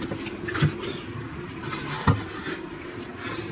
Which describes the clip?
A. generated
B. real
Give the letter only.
B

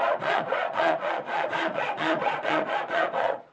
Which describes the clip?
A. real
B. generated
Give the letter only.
B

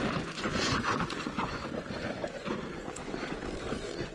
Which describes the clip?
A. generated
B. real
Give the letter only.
A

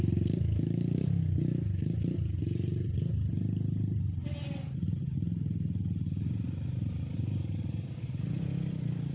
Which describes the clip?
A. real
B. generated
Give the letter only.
A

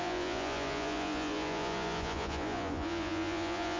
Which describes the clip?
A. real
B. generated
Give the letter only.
B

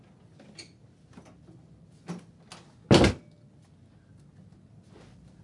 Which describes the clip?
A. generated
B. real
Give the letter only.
B